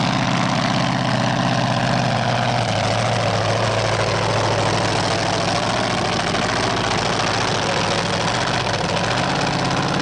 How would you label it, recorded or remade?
recorded